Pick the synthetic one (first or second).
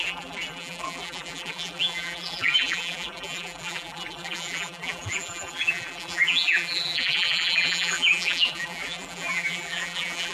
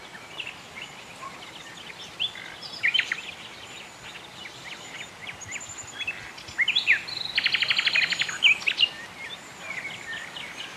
first